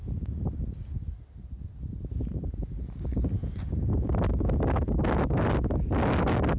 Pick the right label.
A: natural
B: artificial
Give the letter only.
A